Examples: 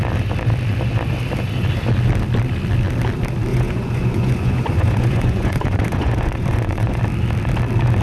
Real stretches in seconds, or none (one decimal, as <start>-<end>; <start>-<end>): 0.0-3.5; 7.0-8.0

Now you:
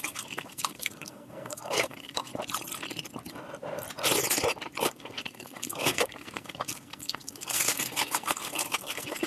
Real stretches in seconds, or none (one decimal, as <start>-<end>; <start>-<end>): 2.3-4.8

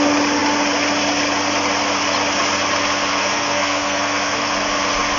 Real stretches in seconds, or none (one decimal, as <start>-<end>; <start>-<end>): 0.0-3.1; 4.5-5.2